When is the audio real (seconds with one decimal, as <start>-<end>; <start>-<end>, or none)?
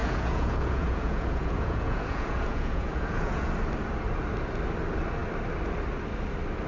3.5-6.7